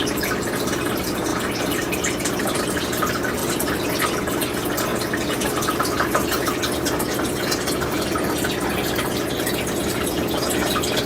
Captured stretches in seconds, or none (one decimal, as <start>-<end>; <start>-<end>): 0.0-3.4; 4.0-11.1